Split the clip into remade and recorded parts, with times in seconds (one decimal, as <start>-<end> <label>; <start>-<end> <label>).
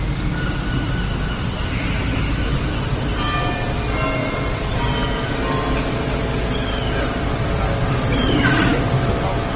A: 0.0-4.2 recorded; 4.2-4.8 remade; 4.8-9.6 recorded